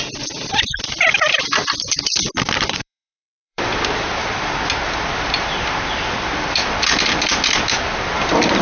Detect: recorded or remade remade